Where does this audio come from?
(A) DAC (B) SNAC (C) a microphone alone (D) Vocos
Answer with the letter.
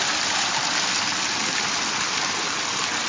C